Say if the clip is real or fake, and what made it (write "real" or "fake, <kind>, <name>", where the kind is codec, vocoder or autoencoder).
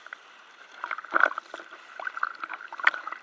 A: real